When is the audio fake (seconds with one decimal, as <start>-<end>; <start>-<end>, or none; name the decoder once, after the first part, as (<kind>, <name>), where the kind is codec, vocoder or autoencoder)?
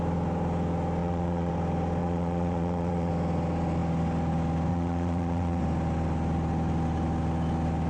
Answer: 1.0-1.5 (vocoder, Vocos); 2.0-3.1; 4.7-5.6